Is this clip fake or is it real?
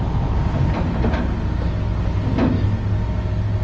real